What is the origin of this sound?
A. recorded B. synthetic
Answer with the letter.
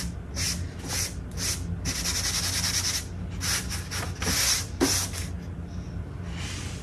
A